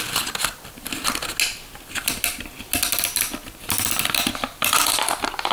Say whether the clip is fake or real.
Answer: real